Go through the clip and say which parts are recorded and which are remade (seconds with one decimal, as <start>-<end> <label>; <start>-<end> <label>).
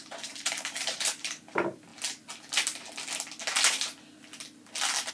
0.0-1.9 remade; 1.9-5.1 recorded